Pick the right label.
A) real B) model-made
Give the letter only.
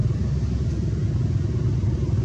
A